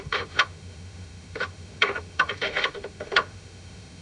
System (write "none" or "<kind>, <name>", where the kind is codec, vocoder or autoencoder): autoencoder, DAC-VAE